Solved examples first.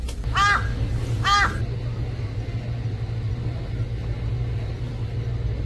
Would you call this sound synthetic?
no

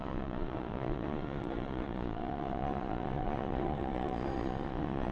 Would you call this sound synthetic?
yes